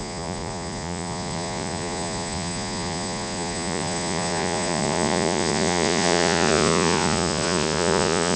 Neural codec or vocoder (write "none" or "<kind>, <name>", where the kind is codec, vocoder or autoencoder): vocoder, Vocos